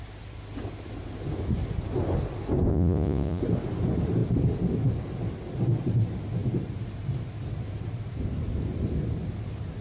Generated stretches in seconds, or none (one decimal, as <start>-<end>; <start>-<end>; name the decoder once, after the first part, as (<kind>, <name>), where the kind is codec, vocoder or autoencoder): 2.7-3.4 (vocoder, Vocos)